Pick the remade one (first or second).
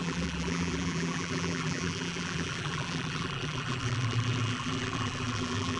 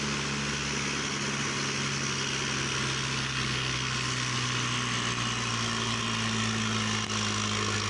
first